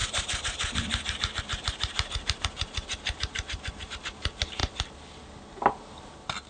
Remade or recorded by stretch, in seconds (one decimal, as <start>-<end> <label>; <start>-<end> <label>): 0.0-3.9 remade; 3.9-6.5 recorded